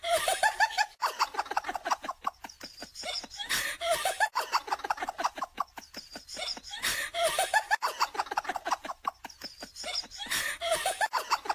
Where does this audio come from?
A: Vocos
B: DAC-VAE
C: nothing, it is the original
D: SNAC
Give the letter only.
C